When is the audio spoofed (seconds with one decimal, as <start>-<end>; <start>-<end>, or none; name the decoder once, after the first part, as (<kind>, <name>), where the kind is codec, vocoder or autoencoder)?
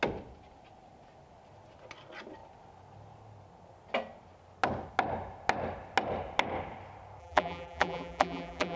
7.2-8.8 (vocoder, BigVGAN v2)